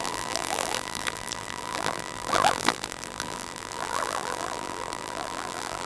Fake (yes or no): yes